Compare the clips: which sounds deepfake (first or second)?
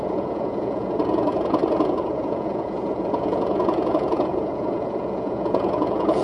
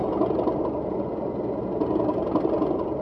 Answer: first